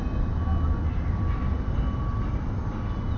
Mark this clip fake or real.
real